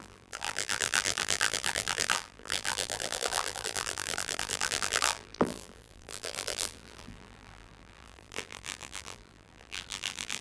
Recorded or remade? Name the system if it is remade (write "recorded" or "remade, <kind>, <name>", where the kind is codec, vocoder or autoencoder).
remade, vocoder, BigVGAN v2